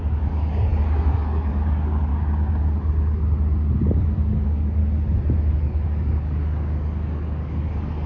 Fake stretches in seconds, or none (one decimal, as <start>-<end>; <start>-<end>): 0.0-2.1; 3.8-4.8; 5.5-8.1